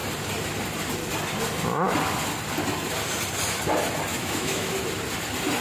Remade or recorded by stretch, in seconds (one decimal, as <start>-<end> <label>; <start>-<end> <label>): 0.0-4.1 recorded; 4.1-4.7 remade; 4.7-5.6 recorded